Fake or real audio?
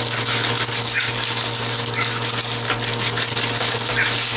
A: real